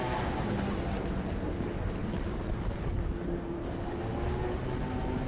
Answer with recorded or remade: recorded